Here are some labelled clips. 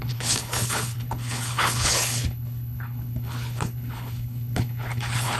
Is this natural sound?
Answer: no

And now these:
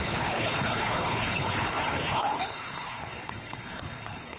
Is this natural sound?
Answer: no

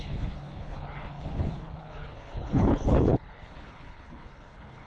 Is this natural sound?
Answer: no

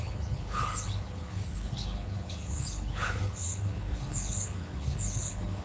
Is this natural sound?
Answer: no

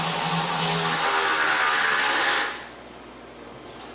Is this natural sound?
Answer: yes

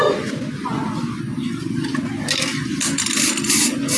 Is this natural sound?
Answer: yes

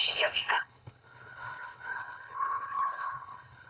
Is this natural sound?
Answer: no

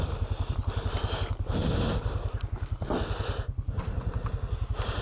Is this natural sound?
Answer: yes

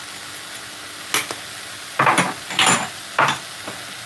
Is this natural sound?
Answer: yes